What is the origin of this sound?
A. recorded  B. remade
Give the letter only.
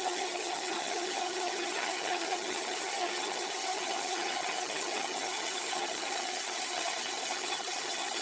B